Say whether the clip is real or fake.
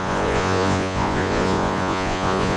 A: fake